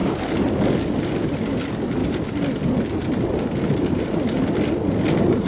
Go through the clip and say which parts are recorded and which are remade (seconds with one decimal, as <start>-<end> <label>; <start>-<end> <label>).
0.0-5.5 recorded